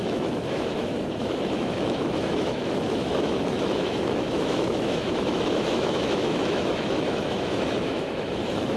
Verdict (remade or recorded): remade